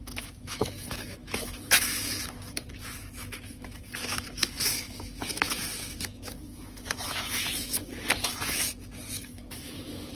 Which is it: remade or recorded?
remade